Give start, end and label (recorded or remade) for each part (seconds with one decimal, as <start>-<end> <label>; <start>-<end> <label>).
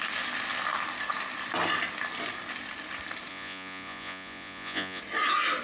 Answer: 0.0-3.3 recorded; 3.3-5.0 remade; 5.0-5.6 recorded